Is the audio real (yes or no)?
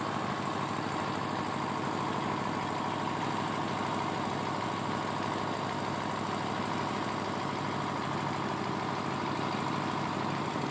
yes